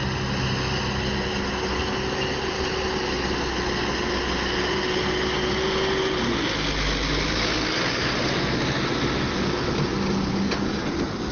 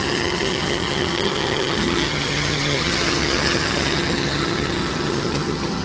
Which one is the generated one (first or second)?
second